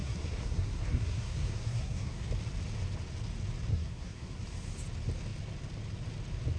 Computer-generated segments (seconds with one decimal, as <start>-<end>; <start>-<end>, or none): 0.0-2.3; 3.7-4.4